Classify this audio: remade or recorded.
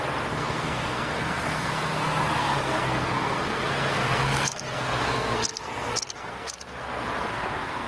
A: remade